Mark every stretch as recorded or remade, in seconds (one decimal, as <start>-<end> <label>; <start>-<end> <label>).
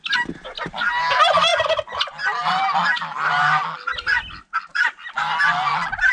0.0-6.1 recorded